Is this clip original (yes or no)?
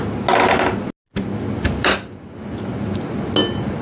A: yes